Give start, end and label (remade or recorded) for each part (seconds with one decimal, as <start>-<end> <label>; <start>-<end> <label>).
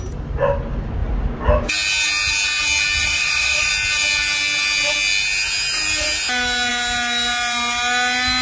0.0-3.0 recorded; 3.0-3.7 remade; 3.7-8.4 recorded